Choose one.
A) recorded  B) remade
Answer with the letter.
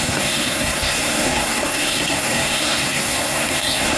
B